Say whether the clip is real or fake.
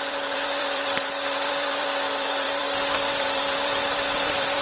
fake